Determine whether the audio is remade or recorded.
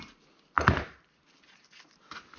recorded